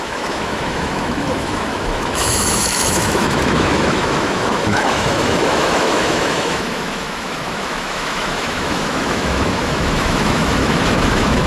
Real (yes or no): no